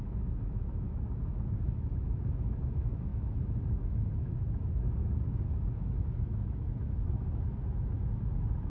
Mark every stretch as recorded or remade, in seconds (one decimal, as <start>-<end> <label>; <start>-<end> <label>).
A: 0.0-8.7 remade